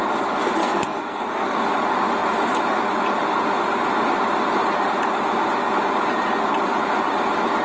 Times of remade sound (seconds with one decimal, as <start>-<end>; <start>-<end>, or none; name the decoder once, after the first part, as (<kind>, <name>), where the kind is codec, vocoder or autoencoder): 0.6-1.6 (codec, SNAC)